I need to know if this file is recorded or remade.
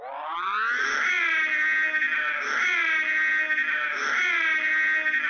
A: recorded